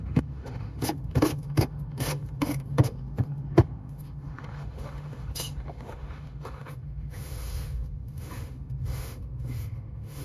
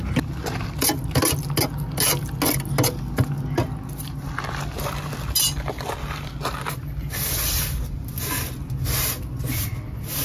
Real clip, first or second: second